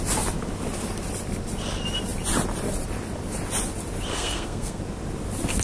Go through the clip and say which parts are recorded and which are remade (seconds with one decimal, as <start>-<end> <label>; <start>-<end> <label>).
0.0-4.1 recorded; 4.1-4.8 remade; 4.8-5.6 recorded